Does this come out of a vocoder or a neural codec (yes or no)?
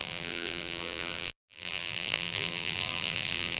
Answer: yes